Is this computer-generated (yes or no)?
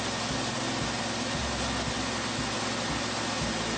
no